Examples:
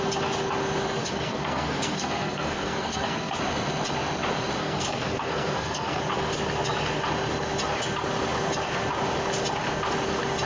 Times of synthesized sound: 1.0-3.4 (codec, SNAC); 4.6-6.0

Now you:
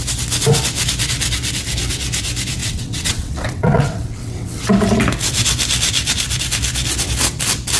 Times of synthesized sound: 2.6-4.6 (vocoder, WaveNeXt)

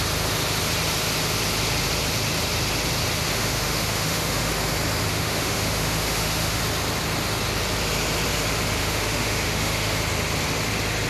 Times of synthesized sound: 3.3-4.5 (autoencoder, DAC-VAE); 5.1-6.6; 8.8-10.0

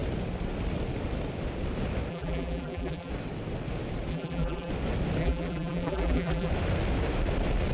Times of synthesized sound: 2.1-3.1 (vocoder, BigVGAN v2); 4.1-4.7; 5.2-6.5